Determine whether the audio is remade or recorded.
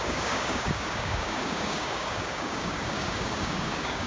remade